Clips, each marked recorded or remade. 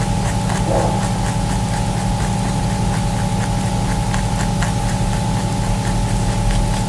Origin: recorded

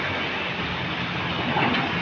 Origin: recorded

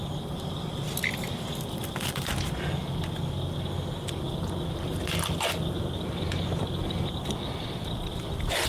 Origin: recorded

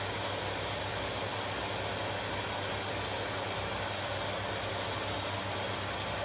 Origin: recorded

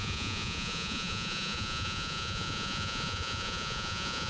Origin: remade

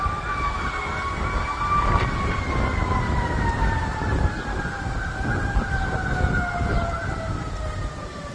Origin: recorded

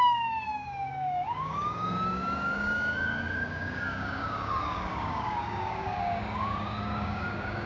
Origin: remade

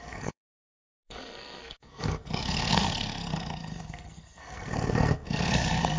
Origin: remade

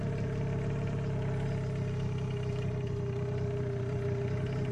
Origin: recorded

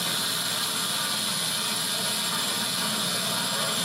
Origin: recorded